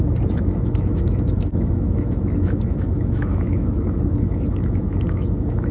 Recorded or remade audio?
remade